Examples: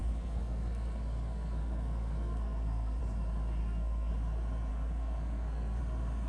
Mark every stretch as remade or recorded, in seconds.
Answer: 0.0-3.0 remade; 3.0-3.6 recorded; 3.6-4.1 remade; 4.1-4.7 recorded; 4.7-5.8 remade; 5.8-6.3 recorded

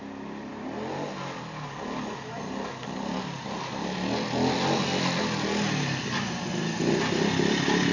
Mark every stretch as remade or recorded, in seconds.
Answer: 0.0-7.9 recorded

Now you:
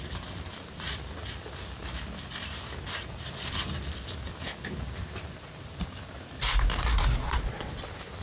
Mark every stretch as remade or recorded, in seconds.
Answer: 0.0-7.2 recorded; 7.2-7.7 remade; 7.7-8.2 recorded

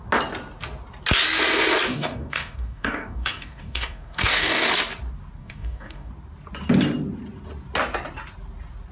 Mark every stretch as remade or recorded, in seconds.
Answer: 0.0-1.9 recorded; 1.9-4.7 remade; 4.7-5.4 recorded; 5.4-6.1 remade; 6.1-8.9 recorded